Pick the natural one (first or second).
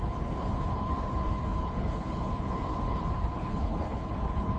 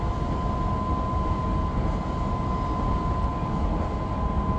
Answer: second